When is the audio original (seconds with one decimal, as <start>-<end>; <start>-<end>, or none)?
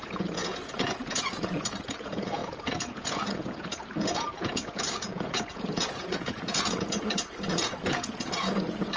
none